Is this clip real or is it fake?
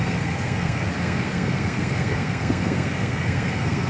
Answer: fake